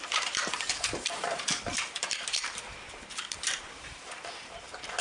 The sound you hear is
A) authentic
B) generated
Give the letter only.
B